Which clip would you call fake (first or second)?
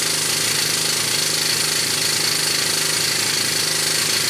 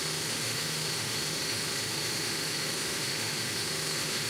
second